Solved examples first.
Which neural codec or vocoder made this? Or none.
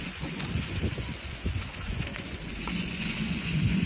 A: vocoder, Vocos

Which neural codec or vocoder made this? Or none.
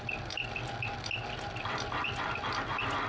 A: none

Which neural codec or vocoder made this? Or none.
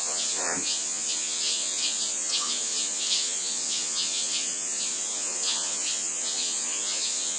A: vocoder, Vocos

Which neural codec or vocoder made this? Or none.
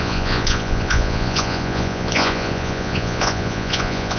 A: vocoder, Vocos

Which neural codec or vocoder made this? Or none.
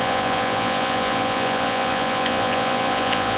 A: vocoder, Vocos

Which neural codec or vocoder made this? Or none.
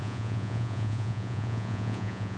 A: vocoder, Vocos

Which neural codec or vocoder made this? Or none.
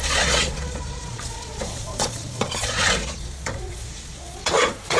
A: vocoder, Vocos